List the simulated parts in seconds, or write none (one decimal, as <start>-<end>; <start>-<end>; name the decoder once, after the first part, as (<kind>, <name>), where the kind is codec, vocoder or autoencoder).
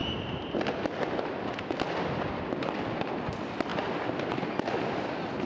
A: none